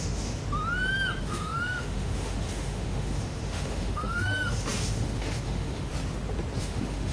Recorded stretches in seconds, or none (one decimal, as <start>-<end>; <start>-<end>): 0.4-1.2; 5.9-6.6